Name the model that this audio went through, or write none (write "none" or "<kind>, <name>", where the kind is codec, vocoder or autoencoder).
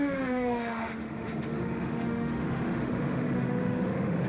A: autoencoder, DAC-VAE